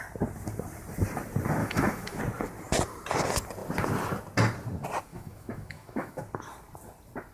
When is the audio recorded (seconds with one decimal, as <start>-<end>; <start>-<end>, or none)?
0.0-1.6; 2.2-5.1; 6.2-7.3